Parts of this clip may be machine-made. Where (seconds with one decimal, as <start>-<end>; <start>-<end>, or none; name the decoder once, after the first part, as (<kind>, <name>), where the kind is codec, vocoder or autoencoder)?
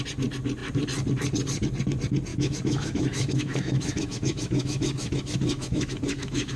2.3-6.6 (autoencoder, DAC-VAE)